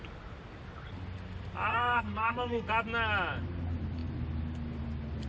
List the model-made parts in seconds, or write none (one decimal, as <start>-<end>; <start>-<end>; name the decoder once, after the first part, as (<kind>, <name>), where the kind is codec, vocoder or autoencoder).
1.7-2.7 (codec, SNAC)